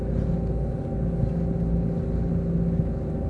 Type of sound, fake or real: real